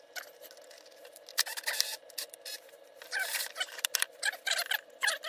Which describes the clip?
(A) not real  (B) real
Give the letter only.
B